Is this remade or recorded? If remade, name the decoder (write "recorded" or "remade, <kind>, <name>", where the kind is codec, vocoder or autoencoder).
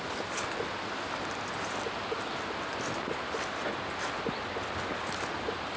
recorded